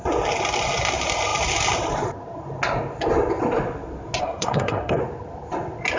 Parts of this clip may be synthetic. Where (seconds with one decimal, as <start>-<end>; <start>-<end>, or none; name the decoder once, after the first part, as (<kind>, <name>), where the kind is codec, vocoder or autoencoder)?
4.2-5.0 (codec, SNAC)